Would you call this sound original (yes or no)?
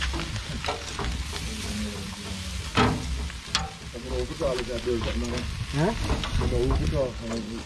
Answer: yes